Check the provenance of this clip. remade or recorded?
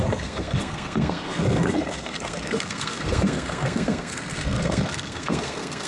remade